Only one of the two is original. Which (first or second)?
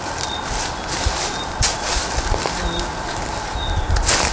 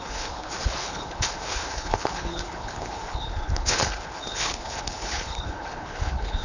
first